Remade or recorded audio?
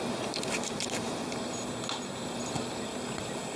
recorded